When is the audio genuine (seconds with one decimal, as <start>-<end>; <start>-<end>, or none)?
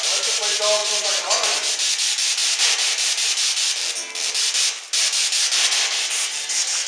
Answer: 0.0-0.8; 1.7-6.9